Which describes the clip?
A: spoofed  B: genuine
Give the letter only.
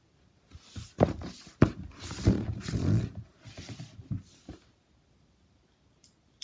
B